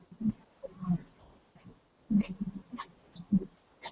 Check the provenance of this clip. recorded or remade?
recorded